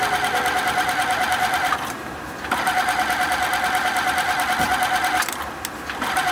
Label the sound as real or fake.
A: real